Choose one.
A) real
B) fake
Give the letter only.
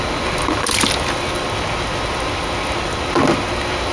A